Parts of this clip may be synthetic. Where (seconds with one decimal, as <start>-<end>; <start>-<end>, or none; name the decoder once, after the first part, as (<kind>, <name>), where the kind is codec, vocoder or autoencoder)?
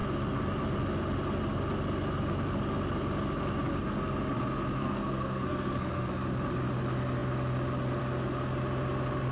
4.8-6.1 (codec, SNAC)